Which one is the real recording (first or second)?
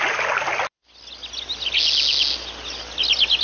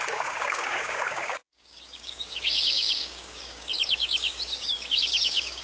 first